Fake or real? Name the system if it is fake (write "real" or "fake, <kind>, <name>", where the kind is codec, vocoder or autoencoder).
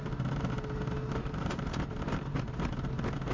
real